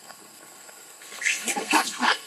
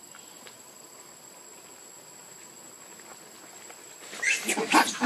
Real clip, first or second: second